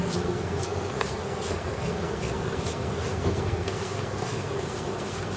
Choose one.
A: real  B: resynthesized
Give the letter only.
B